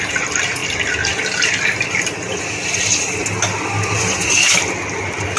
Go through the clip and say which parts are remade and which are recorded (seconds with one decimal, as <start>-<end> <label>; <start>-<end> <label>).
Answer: 0.0-5.4 recorded